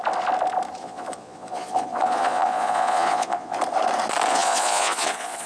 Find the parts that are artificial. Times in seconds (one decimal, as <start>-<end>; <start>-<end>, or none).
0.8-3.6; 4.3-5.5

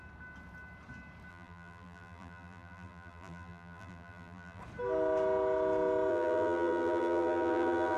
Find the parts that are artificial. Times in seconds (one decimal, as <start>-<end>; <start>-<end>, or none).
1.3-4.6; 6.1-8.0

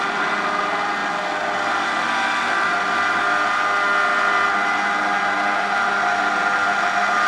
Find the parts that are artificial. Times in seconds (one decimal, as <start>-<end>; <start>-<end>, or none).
none

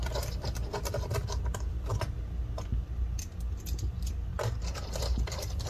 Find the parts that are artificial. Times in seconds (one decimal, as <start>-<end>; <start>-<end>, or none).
0.0-1.9; 3.8-4.3; 5.0-5.7

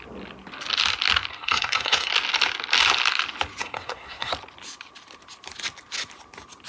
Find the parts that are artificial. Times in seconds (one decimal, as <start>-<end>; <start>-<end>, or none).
1.3-2.1; 3.6-4.3